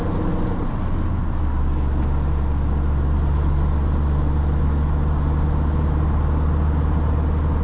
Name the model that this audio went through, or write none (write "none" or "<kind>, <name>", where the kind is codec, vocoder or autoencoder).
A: none